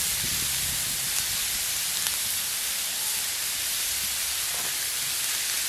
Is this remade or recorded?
recorded